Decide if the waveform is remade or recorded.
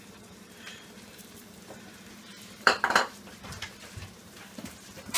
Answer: remade